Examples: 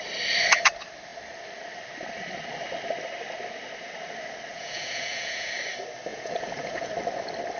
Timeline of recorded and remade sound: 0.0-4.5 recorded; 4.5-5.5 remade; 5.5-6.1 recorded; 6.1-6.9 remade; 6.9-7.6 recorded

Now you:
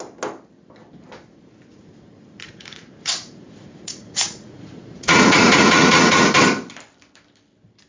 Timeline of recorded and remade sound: 0.0-1.7 recorded; 1.7-6.4 remade; 6.4-7.9 recorded

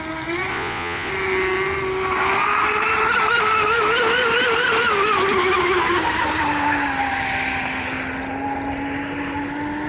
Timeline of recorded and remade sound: 0.0-0.5 recorded; 0.5-1.1 remade; 1.1-9.9 recorded

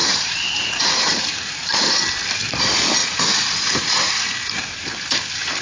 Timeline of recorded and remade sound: 0.0-1.8 remade; 1.8-3.0 recorded; 3.0-4.7 remade; 4.7-5.6 recorded

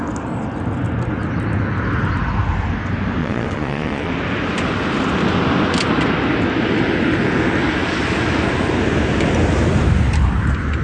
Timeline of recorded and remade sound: 0.0-3.2 recorded; 3.2-4.1 remade; 4.1-10.8 recorded

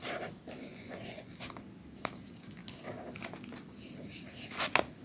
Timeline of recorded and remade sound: 0.0-0.7 recorded; 0.7-1.3 remade; 1.3-5.0 recorded